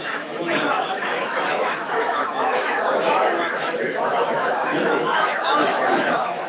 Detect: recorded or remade remade